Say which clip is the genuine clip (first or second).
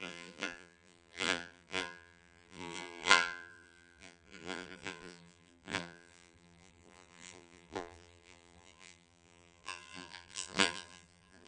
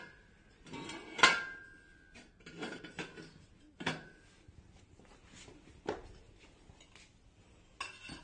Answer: second